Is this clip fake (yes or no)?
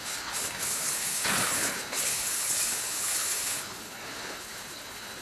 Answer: yes